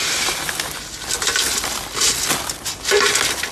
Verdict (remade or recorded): recorded